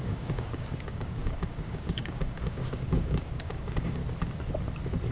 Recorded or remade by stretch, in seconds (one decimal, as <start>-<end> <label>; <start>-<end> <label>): 0.0-4.0 remade; 4.0-5.1 recorded